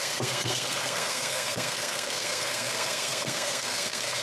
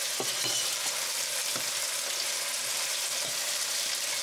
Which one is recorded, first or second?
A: second